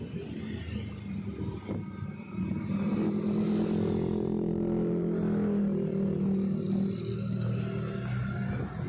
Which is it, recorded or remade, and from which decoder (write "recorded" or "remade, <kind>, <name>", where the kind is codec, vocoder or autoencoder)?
recorded